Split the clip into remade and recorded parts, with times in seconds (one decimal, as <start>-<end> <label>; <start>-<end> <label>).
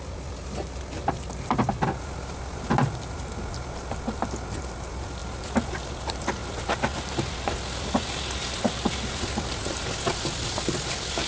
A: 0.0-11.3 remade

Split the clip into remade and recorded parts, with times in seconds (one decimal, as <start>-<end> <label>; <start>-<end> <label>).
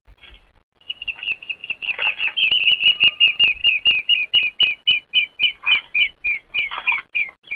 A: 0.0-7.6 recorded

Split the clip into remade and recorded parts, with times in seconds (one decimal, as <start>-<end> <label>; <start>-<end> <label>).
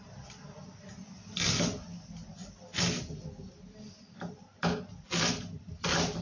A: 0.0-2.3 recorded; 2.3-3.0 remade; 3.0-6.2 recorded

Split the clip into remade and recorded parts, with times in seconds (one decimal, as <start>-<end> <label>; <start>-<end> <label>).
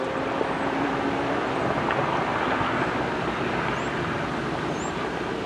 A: 0.0-2.3 recorded; 2.3-2.9 remade; 2.9-5.5 recorded